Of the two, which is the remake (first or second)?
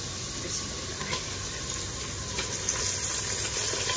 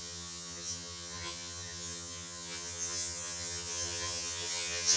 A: second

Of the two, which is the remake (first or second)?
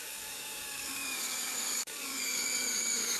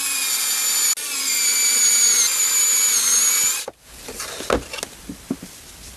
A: first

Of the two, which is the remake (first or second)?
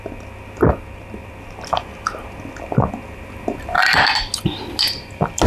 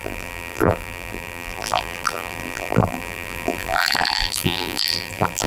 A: second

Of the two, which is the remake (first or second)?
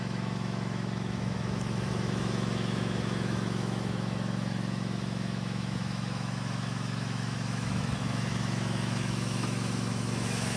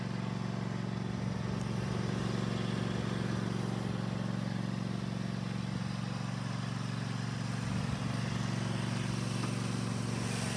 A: first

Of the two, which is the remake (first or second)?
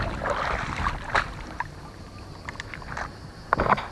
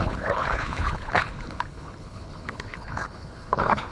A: second